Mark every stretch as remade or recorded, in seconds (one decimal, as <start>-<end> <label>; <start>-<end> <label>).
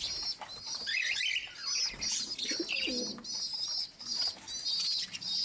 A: 0.0-3.8 recorded; 3.8-4.5 remade; 4.5-5.4 recorded